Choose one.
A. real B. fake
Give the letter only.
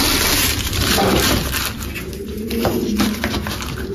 A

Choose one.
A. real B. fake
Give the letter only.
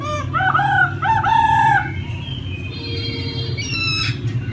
A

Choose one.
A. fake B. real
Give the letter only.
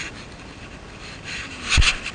B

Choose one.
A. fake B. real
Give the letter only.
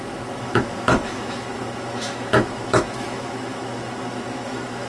A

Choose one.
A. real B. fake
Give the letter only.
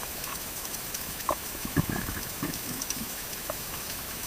B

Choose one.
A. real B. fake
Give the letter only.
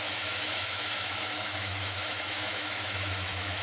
B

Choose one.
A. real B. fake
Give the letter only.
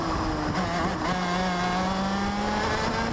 A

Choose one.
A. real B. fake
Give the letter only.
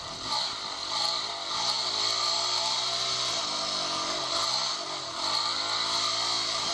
A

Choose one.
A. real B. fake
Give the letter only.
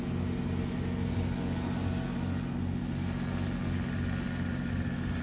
A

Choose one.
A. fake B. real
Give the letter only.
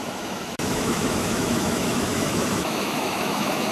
A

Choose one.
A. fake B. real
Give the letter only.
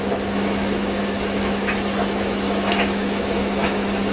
A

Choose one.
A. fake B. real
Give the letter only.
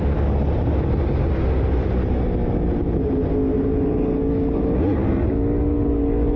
B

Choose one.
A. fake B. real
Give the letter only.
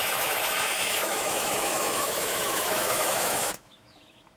A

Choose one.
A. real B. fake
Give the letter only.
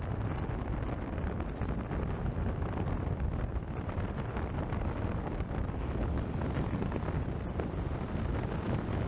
A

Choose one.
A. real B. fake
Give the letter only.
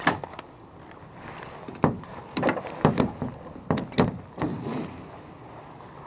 A